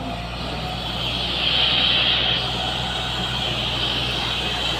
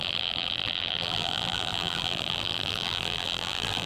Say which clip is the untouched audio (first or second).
first